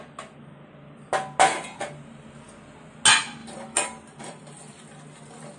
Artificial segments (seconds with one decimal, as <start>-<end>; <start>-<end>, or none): 3.4-4.4